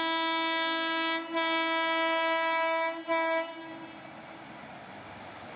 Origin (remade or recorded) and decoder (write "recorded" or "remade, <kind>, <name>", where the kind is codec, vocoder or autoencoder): recorded